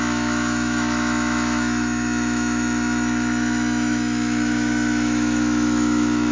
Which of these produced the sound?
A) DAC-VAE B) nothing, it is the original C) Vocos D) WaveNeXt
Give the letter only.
A